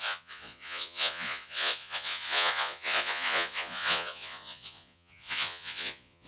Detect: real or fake fake